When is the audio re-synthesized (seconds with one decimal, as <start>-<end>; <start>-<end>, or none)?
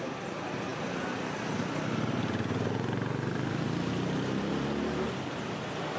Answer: none